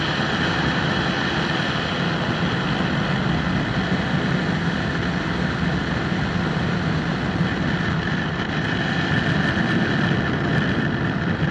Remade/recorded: recorded